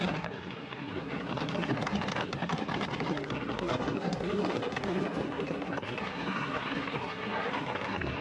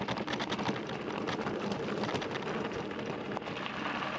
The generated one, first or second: first